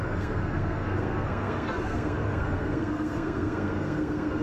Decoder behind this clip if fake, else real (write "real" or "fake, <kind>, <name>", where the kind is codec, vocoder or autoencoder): fake, codec, SNAC